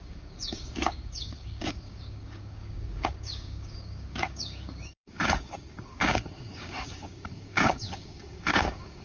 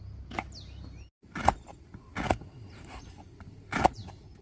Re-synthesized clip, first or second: first